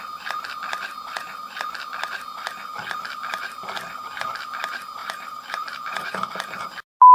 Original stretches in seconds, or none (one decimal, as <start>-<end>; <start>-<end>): 0.0-5.0; 6.6-7.1